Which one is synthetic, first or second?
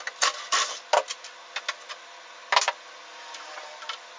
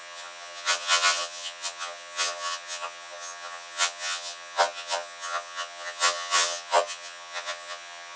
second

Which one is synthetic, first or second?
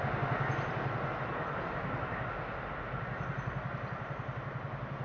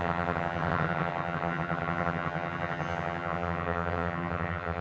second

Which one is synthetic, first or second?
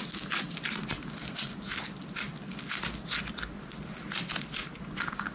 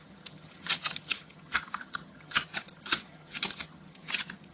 second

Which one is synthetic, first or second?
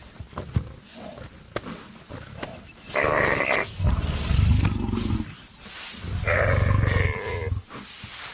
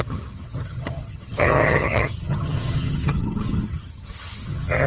second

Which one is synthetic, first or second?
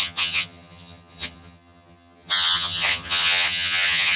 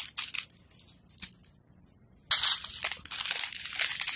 first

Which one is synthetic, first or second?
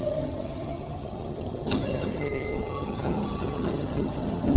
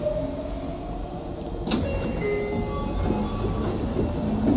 first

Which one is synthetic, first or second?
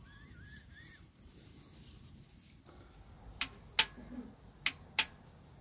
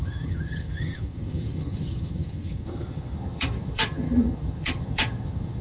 second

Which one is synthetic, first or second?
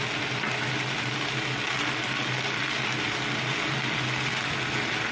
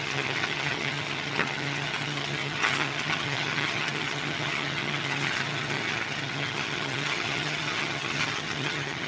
second